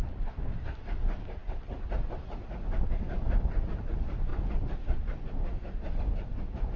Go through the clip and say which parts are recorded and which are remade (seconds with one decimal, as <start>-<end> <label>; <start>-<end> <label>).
0.0-4.3 recorded; 4.3-5.9 remade; 5.9-6.8 recorded

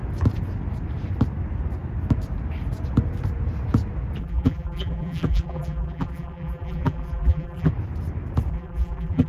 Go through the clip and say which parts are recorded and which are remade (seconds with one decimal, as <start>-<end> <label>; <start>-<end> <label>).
0.0-4.2 recorded; 4.2-7.7 remade; 7.7-8.5 recorded; 8.5-9.3 remade

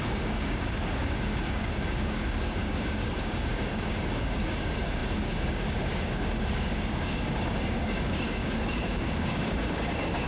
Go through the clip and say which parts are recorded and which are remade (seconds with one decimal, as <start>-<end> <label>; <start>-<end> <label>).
0.0-10.3 remade

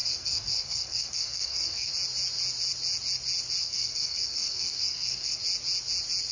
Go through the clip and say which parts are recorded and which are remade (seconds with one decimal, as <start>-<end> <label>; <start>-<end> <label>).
0.0-1.9 remade; 1.9-3.6 recorded; 3.6-5.4 remade; 5.4-6.3 recorded

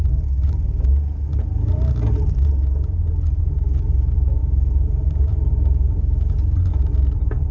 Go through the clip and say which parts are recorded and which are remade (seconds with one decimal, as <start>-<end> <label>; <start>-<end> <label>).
0.0-4.4 recorded; 4.4-5.5 remade; 5.5-7.5 recorded

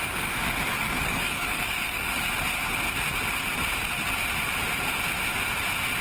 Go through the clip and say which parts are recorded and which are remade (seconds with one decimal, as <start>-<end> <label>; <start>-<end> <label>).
0.0-0.7 recorded; 0.7-2.3 remade; 2.3-6.0 recorded